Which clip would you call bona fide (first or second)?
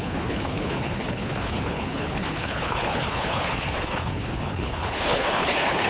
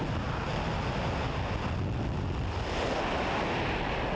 second